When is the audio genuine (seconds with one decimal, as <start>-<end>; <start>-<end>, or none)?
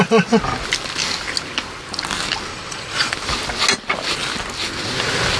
0.0-2.5; 3.1-5.4